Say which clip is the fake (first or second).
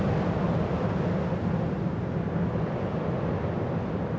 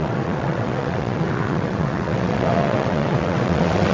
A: second